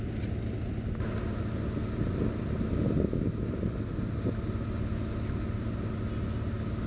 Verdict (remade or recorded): recorded